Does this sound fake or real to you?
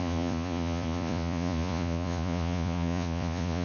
fake